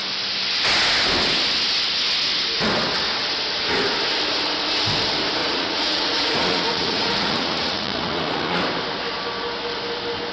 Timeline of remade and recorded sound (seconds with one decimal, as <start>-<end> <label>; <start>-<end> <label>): 0.0-5.4 recorded; 5.4-8.6 remade; 8.6-10.3 recorded